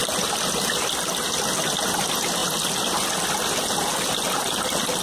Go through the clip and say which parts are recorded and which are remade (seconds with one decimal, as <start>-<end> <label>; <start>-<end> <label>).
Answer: 0.0-5.0 recorded